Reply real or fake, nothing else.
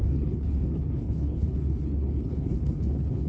fake